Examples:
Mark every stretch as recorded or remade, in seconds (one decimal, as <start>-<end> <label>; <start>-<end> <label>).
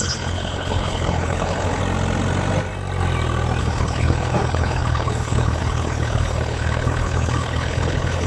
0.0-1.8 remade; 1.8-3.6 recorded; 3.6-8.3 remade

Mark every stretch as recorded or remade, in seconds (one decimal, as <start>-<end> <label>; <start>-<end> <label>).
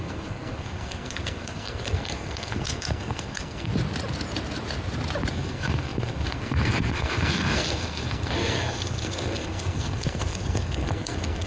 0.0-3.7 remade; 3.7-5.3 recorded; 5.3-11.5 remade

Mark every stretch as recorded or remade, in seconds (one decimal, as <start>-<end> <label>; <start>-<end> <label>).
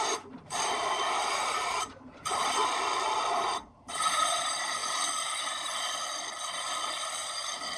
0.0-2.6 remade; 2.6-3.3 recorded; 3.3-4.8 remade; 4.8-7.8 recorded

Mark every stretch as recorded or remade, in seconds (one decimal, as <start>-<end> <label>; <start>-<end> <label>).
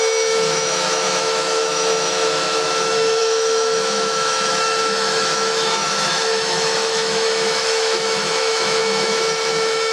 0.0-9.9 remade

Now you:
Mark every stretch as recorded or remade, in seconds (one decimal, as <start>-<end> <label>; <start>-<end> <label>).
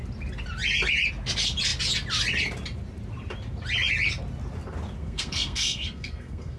0.0-5.0 recorded; 5.0-6.6 remade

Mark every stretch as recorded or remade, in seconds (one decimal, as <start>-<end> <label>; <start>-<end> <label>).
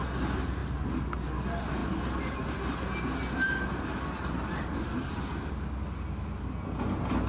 0.0-7.3 recorded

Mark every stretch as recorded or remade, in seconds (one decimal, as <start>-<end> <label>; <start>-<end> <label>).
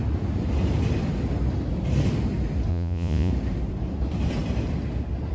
0.0-2.7 recorded; 2.7-3.3 remade; 3.3-5.3 recorded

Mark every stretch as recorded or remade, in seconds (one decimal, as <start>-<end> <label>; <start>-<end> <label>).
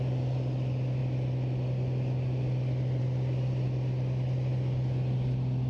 0.0-5.7 recorded